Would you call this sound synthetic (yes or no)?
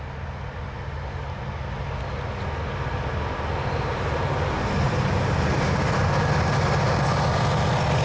no